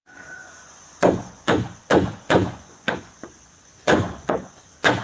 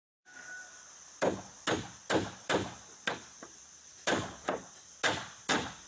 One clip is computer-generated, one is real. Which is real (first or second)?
second